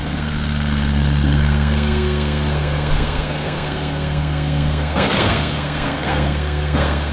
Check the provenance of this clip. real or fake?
fake